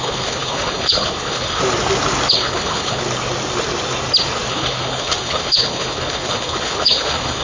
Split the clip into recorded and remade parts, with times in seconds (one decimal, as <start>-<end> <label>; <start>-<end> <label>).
0.0-1.6 remade; 1.6-2.3 recorded; 2.3-3.0 remade; 3.0-4.5 recorded; 4.5-7.4 remade